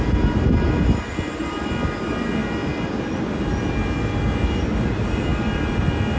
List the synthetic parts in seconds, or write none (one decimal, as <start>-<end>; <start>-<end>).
none